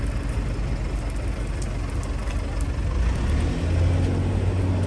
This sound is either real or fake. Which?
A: real